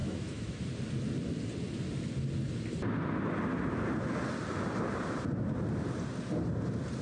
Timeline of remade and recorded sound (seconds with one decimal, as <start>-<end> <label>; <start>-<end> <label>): 0.0-0.6 remade; 0.6-7.0 recorded